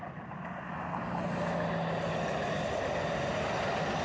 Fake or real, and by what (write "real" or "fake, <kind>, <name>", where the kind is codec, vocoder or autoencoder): real